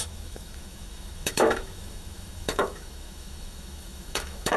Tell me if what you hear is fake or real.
fake